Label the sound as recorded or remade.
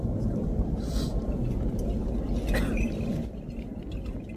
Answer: recorded